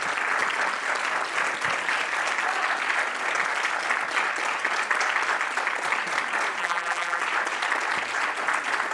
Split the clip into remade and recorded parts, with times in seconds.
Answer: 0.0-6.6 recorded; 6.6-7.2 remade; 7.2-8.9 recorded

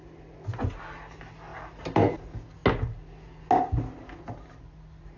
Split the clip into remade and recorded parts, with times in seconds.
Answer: 0.0-1.5 recorded; 1.5-2.1 remade; 2.1-5.2 recorded

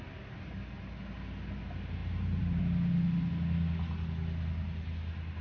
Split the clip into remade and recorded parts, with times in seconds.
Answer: 0.0-2.0 recorded; 2.0-2.6 remade; 2.6-5.4 recorded

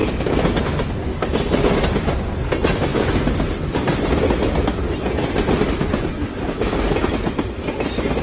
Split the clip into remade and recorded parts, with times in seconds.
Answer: 0.0-8.2 recorded

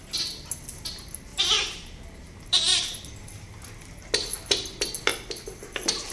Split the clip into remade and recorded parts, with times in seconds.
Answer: 0.0-1.3 recorded; 1.3-3.1 remade; 3.1-6.1 recorded

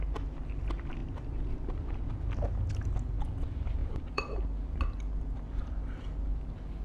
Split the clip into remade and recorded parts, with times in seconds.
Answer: 0.0-1.0 recorded; 1.0-2.1 remade; 2.1-3.8 recorded; 3.8-4.4 remade; 4.4-6.8 recorded

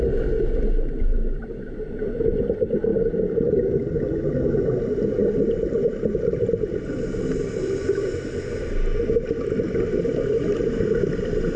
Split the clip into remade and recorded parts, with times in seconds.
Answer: 0.0-1.4 recorded; 1.4-2.3 remade; 2.3-2.9 recorded; 2.9-3.5 remade; 3.5-11.6 recorded